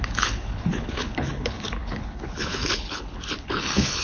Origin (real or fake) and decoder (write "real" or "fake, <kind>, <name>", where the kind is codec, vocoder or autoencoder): fake, codec, HILCodec